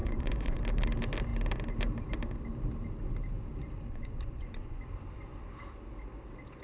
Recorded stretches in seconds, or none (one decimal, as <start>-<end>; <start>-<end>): 0.6-3.9; 4.8-6.6